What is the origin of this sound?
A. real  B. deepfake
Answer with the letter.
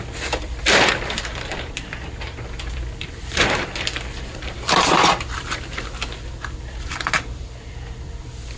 B